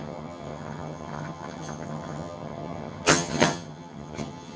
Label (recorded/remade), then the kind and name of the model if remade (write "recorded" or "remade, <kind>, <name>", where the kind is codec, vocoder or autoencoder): remade, vocoder, HiFi-GAN